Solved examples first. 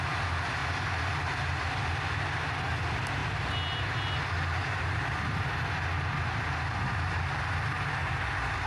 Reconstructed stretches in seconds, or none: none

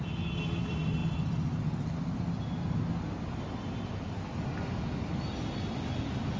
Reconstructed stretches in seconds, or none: none

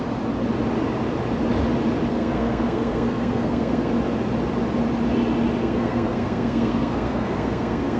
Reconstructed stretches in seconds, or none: 2.1-3.9 (codec, SNAC); 5.6-8.0

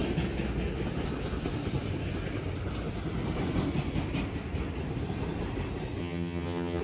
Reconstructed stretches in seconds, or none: 6.0-6.8 (vocoder, HiFi-GAN)

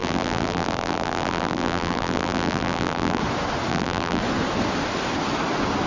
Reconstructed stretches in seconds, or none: 0.0-3.2 (vocoder, BigVGAN v2); 3.7-4.2

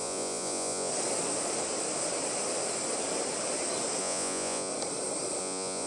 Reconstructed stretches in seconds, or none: 0.0-0.9 (vocoder, Vocos); 4.0-4.7; 5.4-5.9

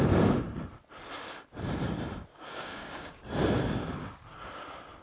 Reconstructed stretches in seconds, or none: 2.3-3.2 (codec, DAC)

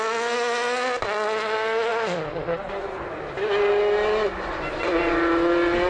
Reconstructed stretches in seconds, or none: none